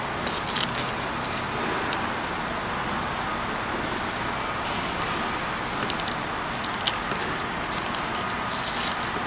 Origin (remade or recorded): recorded